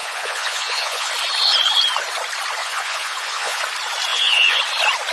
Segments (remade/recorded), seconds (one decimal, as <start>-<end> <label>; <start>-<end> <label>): 0.0-1.1 remade; 1.1-2.6 recorded; 2.6-3.6 remade; 3.6-4.1 recorded; 4.1-4.6 remade; 4.6-5.1 recorded